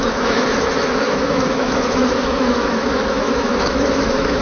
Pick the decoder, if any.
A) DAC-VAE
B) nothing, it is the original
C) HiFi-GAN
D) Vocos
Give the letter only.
A